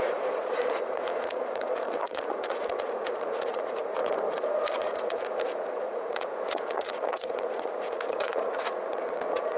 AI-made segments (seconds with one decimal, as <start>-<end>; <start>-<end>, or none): 0.0-9.6